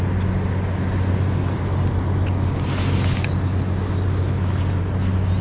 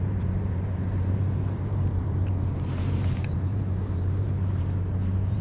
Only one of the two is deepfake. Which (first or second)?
second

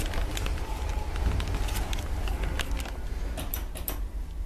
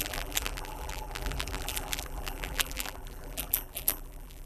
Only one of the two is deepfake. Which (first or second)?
second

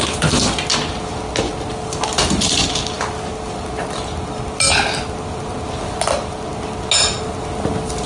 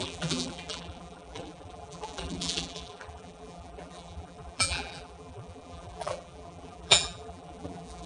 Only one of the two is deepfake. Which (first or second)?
second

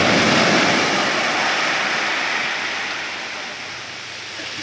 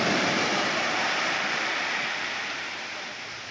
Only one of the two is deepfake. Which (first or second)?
second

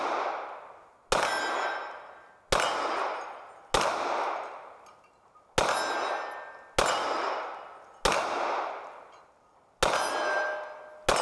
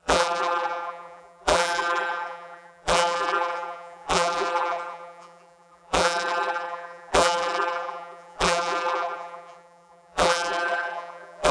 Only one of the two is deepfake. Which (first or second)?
second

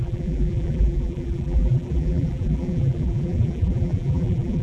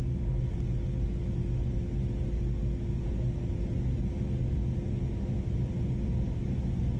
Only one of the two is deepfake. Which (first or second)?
first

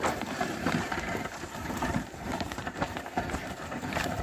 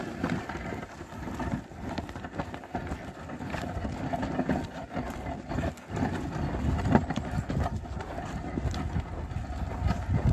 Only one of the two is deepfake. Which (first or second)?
first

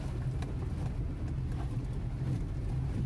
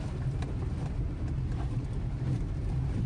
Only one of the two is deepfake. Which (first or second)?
second